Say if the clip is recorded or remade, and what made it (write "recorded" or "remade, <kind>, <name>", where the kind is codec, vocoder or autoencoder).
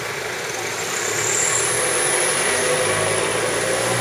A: recorded